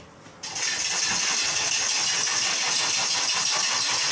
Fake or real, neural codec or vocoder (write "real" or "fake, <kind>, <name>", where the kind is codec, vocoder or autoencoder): real